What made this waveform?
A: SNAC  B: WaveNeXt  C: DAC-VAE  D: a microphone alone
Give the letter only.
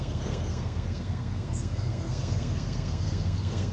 A